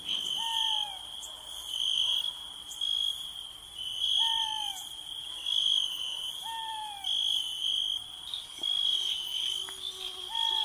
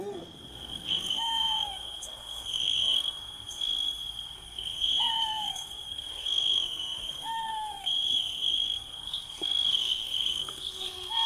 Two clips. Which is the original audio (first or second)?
first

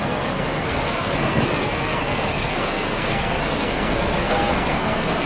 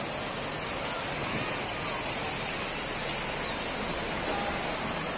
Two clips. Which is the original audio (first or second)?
second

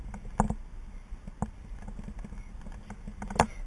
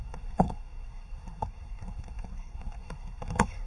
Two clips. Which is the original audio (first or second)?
first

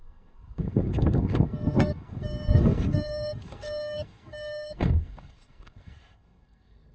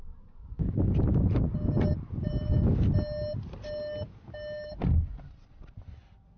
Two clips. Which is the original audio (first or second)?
second